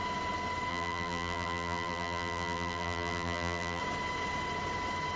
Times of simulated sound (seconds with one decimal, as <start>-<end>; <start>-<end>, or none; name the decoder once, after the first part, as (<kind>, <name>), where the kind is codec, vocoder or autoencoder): 0.7-3.8 (vocoder, BigVGAN v2)